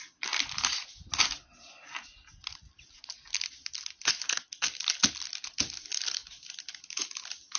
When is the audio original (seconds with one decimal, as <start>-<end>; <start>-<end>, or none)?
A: 0.0-7.6